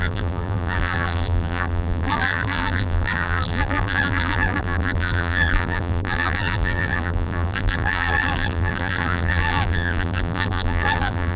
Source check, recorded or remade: remade